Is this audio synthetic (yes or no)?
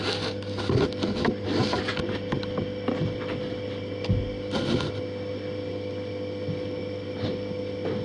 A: no